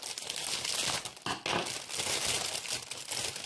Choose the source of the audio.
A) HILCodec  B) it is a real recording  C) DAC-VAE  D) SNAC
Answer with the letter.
B